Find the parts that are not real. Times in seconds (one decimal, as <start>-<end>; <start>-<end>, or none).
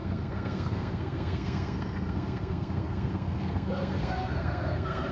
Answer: 0.0-5.1